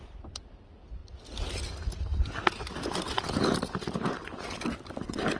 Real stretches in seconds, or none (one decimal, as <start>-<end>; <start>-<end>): 0.0-5.4